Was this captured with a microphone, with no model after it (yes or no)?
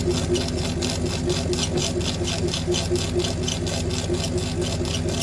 yes